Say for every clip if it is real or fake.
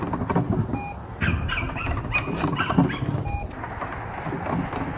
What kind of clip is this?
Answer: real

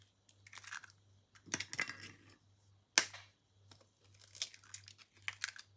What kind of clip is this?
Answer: real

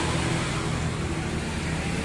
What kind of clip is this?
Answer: real